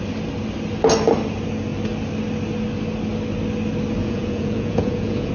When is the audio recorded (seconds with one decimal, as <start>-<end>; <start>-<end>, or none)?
0.0-4.0